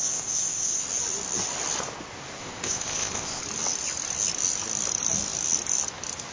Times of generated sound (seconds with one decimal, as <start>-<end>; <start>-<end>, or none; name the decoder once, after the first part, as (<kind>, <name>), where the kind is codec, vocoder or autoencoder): 0.0-0.8 (codec, ZipCodec); 2.4-3.4